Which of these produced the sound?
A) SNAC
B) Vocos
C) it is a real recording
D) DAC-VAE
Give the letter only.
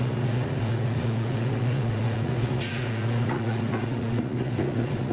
B